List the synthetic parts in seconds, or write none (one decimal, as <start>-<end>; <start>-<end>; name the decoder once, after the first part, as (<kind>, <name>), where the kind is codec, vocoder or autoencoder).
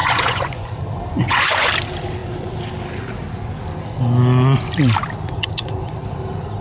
0.0-0.7 (vocoder, Vocos); 1.1-1.7